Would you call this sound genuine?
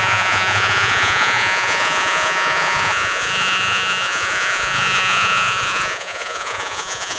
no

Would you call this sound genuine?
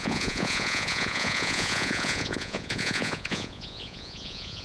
no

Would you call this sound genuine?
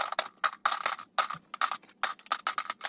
yes